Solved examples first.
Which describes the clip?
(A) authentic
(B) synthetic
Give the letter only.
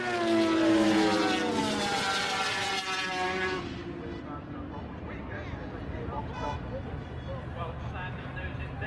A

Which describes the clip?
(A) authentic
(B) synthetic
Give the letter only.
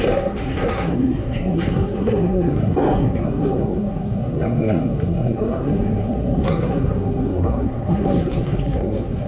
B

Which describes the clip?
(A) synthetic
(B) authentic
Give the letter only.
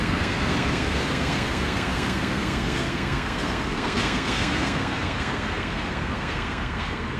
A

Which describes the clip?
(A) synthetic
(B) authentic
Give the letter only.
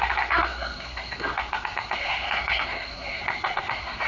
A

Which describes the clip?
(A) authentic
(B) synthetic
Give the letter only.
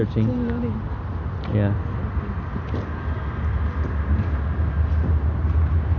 A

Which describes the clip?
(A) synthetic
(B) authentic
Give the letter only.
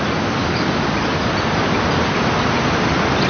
B